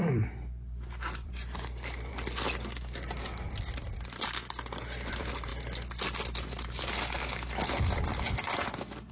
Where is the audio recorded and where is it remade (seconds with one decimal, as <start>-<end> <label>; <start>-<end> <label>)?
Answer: 0.0-2.1 remade; 2.1-5.1 recorded; 5.1-5.5 remade; 5.5-9.1 recorded